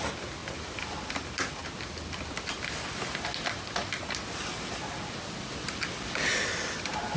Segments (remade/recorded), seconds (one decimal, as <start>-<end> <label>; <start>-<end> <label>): 0.0-7.2 recorded